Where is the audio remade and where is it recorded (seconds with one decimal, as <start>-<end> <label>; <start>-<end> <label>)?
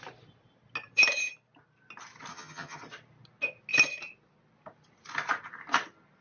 0.0-2.3 recorded; 2.3-2.8 remade; 2.8-6.2 recorded